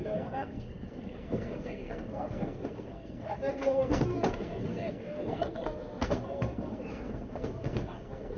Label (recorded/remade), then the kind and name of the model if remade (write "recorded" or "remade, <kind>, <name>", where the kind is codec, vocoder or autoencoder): remade, codec, SNAC